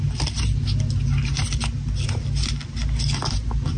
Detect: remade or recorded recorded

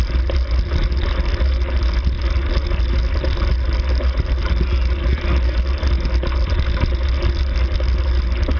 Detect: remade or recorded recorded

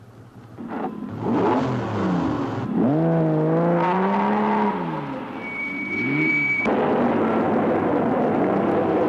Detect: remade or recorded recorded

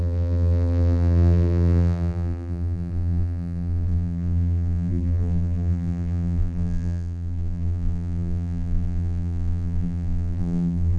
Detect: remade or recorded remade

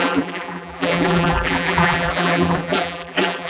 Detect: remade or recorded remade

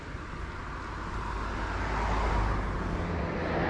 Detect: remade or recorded recorded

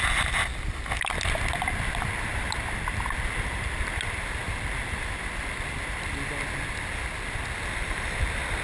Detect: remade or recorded recorded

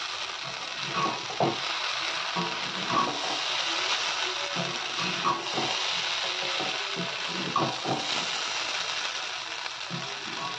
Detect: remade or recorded recorded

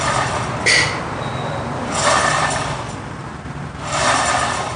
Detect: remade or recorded remade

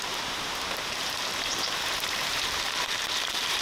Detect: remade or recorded remade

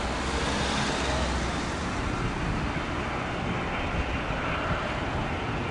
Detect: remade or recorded recorded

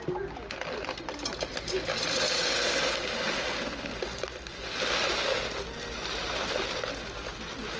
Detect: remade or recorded recorded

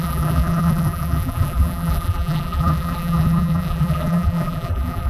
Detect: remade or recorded remade